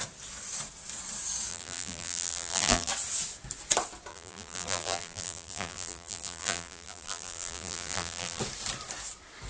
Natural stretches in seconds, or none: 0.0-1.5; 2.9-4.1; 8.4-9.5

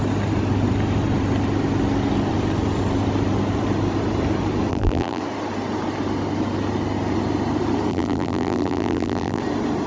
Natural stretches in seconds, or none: 0.0-4.7; 5.2-7.9; 9.4-9.9

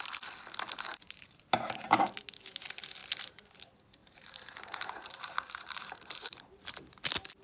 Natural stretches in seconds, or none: 0.0-0.9; 2.1-3.0; 3.5-4.0; 6.9-7.4

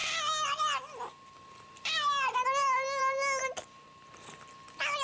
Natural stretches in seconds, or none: 0.0-5.0

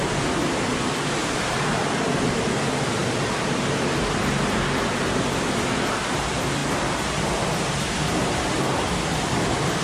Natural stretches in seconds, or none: 0.0-1.2; 1.8-6.6; 8.9-9.8

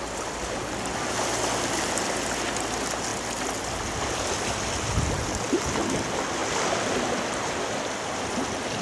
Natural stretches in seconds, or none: 0.0-8.8